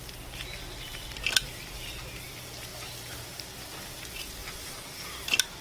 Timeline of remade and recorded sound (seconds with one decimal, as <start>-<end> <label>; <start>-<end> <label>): 0.0-0.9 recorded; 0.9-1.9 remade; 1.9-2.7 recorded; 2.7-3.2 remade; 3.2-5.6 recorded